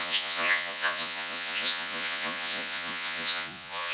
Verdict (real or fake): fake